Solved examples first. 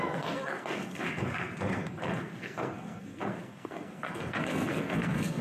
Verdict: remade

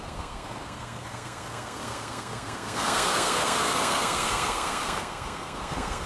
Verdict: remade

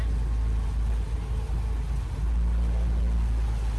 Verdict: recorded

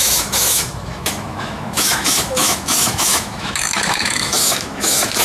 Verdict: remade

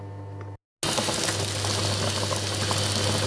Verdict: recorded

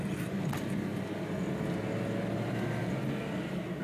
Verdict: recorded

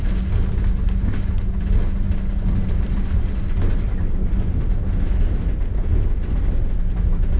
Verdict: recorded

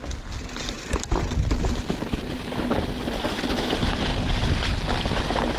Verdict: recorded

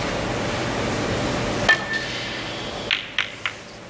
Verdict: recorded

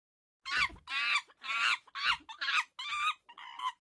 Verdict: recorded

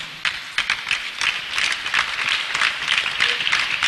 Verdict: recorded